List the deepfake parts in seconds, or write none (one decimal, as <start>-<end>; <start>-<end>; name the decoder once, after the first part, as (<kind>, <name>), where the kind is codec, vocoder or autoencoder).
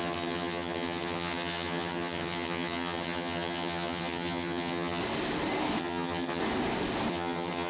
0.0-5.0 (vocoder, HiFi-GAN); 5.8-6.4; 7.1-7.7